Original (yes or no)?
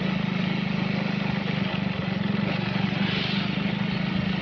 yes